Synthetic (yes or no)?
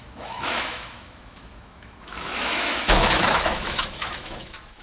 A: yes